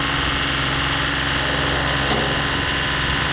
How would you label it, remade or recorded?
recorded